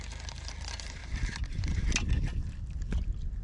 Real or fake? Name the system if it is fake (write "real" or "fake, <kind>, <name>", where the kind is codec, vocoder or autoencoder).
real